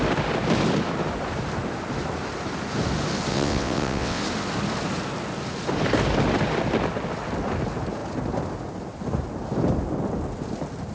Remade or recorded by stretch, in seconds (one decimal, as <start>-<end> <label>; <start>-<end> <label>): 0.0-3.3 recorded; 3.3-4.2 remade; 4.2-10.9 recorded